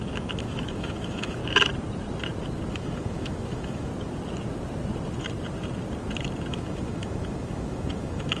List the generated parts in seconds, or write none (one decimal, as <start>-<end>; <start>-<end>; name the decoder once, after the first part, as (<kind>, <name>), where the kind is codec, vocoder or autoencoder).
0.0-1.4 (autoencoder, DAC-VAE); 2.7-3.9; 6.5-8.4